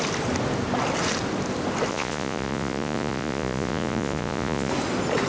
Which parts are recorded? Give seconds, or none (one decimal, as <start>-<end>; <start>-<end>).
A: 0.0-1.9; 4.7-5.3